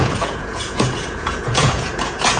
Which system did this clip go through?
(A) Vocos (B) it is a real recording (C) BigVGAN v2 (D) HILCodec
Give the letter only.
A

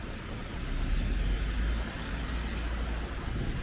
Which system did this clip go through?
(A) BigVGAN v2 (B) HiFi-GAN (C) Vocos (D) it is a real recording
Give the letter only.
D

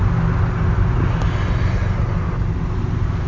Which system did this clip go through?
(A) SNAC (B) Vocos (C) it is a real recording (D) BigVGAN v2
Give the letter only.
C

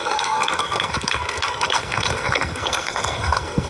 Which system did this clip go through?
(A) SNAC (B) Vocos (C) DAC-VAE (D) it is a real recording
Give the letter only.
A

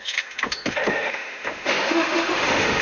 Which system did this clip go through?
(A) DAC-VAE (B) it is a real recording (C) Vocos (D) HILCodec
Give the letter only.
A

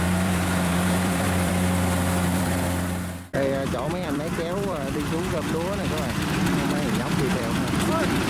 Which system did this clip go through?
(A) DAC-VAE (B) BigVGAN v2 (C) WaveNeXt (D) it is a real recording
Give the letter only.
B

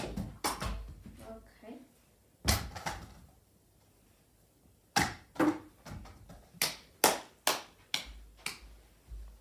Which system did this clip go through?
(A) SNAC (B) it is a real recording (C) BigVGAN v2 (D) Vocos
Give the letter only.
B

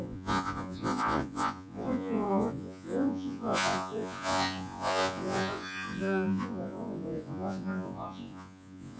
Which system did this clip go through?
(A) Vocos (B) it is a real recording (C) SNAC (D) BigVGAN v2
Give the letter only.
A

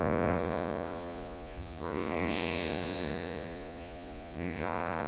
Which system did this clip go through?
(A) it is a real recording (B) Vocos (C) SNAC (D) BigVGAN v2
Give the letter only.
B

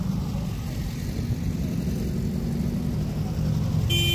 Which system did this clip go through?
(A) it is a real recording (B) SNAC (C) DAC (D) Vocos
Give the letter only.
A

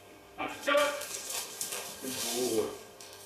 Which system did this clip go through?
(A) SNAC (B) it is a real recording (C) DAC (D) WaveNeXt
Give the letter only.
A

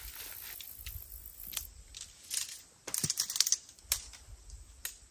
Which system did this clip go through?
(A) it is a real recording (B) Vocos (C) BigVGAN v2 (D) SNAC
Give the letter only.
A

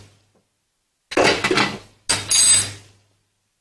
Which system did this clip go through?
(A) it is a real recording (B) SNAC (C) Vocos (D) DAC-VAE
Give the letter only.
A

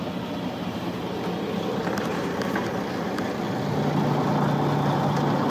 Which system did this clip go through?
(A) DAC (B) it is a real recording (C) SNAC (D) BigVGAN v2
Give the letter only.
B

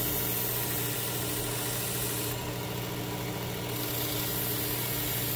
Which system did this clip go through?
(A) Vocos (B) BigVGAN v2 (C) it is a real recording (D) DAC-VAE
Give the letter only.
C